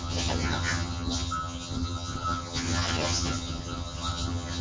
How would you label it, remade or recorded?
remade